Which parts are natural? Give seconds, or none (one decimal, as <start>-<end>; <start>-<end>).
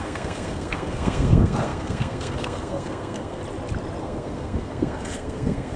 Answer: 3.4-4.0